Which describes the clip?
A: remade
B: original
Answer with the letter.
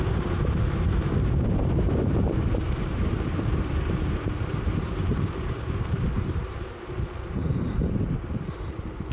A